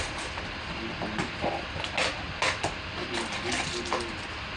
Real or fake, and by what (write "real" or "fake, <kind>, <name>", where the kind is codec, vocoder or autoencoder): real